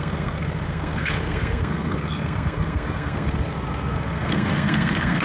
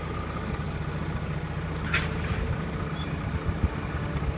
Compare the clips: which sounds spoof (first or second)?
first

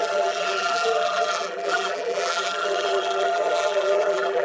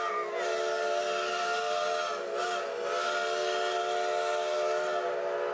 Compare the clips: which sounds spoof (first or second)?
first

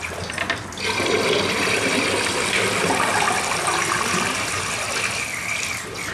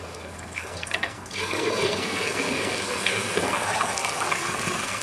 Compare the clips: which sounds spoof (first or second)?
second